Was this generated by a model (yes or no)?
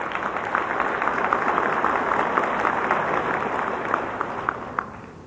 no